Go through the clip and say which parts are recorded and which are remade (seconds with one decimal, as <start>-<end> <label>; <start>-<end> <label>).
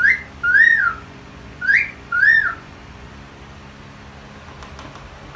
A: 0.0-0.7 recorded; 0.7-3.1 remade; 3.1-5.4 recorded